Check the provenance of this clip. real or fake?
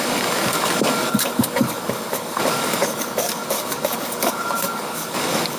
fake